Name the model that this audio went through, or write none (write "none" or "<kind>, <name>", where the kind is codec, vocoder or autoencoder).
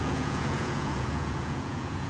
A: vocoder, Vocos